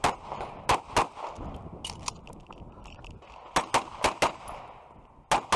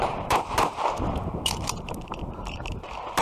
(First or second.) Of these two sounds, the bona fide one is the first